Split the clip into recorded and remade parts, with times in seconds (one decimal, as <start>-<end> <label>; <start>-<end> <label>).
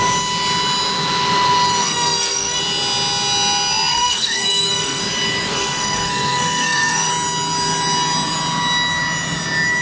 0.0-1.8 recorded; 1.8-2.6 remade; 2.6-3.9 recorded; 3.9-5.0 remade; 5.0-5.5 recorded; 5.5-7.1 remade; 7.1-9.8 recorded